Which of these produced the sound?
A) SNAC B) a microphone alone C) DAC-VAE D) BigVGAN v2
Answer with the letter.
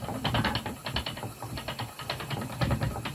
B